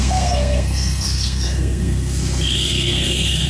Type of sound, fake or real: fake